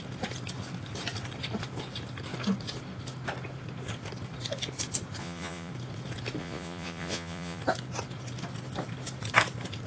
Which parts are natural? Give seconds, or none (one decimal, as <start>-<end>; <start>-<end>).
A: 0.0-5.2; 5.7-6.4; 7.6-9.9